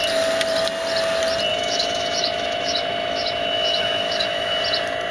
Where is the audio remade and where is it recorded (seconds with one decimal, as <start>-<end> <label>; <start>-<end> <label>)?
0.0-1.5 recorded; 1.5-4.6 remade; 4.6-5.1 recorded